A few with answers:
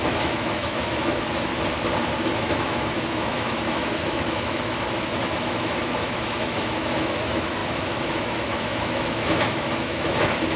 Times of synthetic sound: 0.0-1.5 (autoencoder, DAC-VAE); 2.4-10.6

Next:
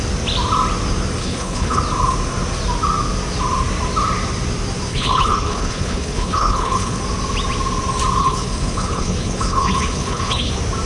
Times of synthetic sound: 1.2-1.8 (codec, HILCodec); 4.9-7.0; 8.2-10.5

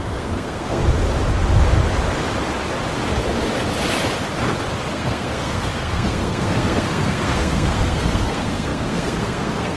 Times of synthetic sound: 0.0-0.8 (codec, SNAC); 4.9-9.8

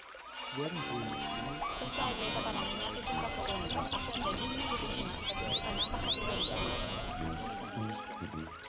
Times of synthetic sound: 1.7-2.6 (vocoder, Vocos); 6.3-7.1

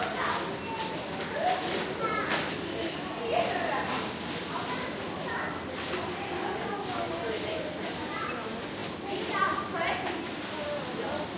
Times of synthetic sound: none

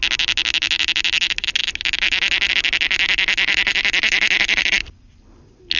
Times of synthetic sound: none